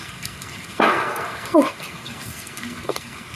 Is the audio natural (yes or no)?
no